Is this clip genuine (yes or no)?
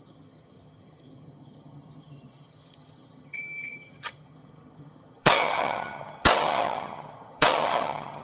no